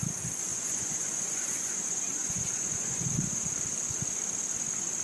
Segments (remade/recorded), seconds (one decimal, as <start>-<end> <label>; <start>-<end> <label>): 0.0-0.5 recorded; 0.5-3.5 remade; 3.5-5.0 recorded